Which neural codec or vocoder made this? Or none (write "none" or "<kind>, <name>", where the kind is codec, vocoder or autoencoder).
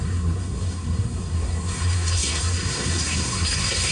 codec, SNAC